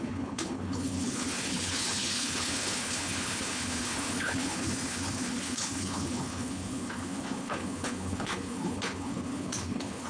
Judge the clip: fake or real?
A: fake